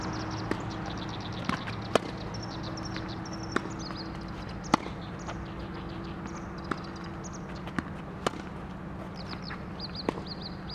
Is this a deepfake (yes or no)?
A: no